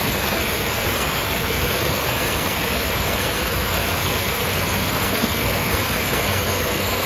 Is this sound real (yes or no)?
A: no